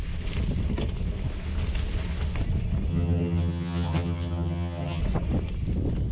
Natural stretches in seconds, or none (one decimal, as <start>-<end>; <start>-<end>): 0.0-2.9; 5.0-6.1